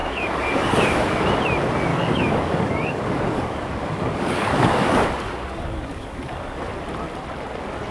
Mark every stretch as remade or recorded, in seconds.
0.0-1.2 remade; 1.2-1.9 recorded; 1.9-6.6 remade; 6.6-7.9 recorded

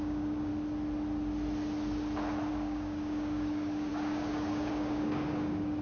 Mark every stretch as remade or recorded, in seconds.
0.0-0.5 remade; 0.5-2.5 recorded; 2.5-5.8 remade

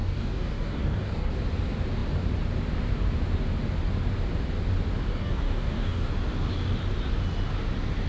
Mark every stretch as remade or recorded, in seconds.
0.0-1.3 remade; 1.3-5.1 recorded; 5.1-6.1 remade; 6.1-8.1 recorded

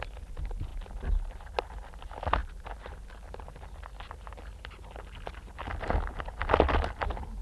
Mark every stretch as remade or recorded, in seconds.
0.0-7.4 recorded

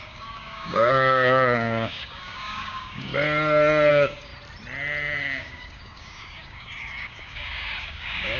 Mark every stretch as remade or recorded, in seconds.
0.0-3.1 remade; 3.1-3.9 recorded; 3.9-4.3 remade; 4.3-5.2 recorded; 5.2-8.4 remade